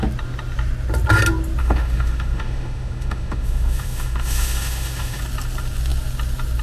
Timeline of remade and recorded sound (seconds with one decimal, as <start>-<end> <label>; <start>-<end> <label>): 0.0-1.6 recorded; 1.6-5.2 remade; 5.2-6.6 recorded

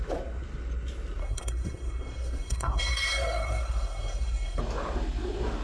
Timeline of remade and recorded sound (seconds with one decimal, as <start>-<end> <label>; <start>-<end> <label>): 0.0-1.2 recorded; 1.2-4.6 remade; 4.6-5.6 recorded

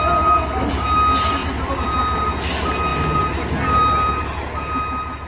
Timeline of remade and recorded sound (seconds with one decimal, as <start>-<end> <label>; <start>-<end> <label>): 0.0-5.3 recorded

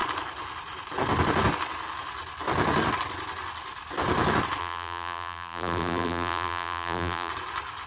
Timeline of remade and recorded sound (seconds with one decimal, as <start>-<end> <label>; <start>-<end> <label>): 0.0-4.6 recorded; 4.6-7.3 remade; 7.3-7.9 recorded

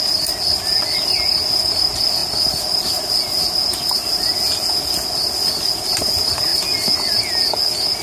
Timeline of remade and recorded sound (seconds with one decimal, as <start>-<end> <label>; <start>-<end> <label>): 0.0-8.0 recorded